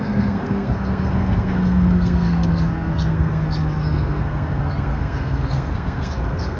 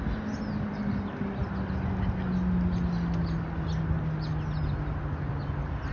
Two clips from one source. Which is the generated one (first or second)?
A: first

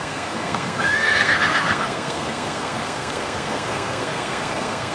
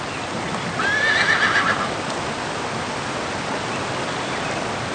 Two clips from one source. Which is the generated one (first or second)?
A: first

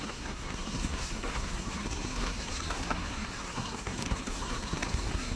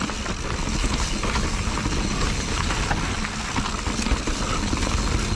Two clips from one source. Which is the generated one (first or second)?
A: first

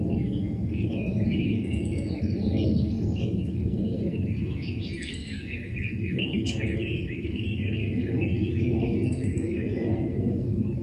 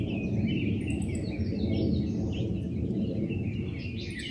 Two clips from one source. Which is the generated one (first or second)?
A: first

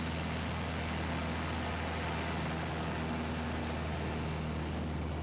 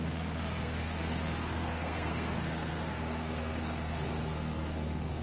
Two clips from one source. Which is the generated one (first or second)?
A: second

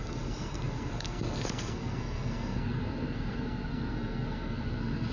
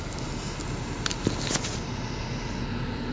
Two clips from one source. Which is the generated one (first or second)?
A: first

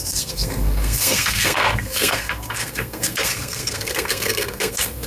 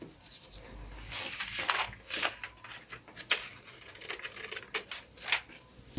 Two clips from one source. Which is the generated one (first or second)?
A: first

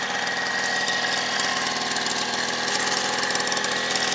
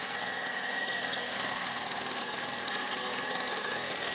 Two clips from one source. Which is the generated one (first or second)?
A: second